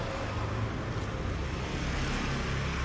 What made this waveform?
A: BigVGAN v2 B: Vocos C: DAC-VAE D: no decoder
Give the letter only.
D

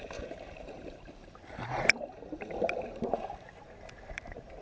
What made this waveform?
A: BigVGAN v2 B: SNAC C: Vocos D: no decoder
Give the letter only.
A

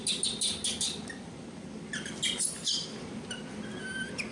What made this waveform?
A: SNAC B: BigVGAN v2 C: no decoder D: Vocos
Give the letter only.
C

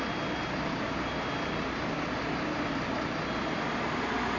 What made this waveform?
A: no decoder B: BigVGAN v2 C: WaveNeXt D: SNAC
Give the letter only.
A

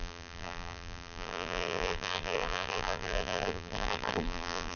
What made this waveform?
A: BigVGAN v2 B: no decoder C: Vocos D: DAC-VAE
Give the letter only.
A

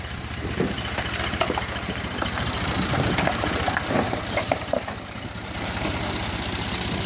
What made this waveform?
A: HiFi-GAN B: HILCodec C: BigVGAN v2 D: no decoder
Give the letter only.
C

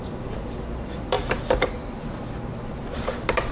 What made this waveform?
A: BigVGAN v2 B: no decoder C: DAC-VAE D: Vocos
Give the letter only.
A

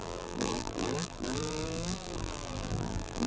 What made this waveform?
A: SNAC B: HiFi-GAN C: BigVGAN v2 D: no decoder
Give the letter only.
C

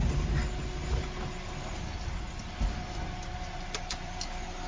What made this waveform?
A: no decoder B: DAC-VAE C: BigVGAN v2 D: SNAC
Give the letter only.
A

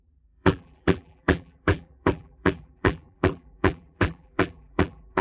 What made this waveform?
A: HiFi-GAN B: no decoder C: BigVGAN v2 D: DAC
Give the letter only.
C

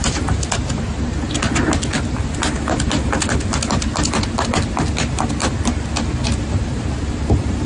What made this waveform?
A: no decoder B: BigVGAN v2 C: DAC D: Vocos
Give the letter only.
A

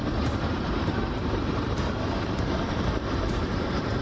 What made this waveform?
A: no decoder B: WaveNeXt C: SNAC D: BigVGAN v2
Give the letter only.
D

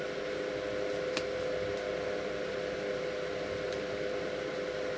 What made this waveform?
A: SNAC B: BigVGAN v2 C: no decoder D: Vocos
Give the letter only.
C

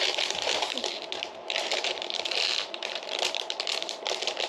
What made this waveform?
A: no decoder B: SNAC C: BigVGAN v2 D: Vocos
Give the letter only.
C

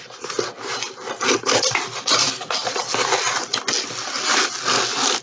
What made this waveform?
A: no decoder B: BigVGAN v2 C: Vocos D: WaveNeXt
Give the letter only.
A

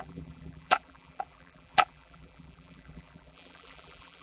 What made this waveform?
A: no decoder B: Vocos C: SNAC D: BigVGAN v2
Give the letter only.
D